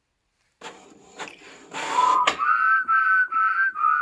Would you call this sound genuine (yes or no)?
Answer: yes